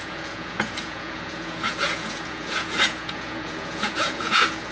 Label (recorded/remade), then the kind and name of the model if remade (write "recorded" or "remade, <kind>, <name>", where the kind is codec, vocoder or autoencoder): remade, vocoder, Vocos